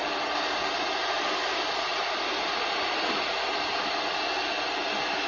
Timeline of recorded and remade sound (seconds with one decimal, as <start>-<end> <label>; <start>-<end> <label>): 0.0-5.3 recorded